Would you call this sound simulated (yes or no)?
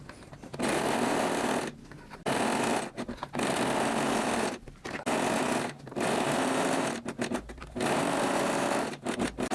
no